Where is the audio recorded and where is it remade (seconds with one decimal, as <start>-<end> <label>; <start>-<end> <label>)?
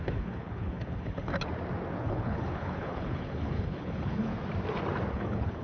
0.0-1.3 remade; 1.3-2.0 recorded; 2.0-4.3 remade; 4.3-5.1 recorded; 5.1-5.6 remade